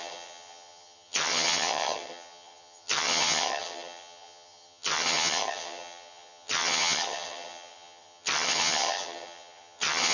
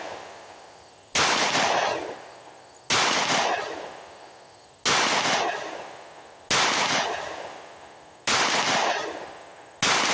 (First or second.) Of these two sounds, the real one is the second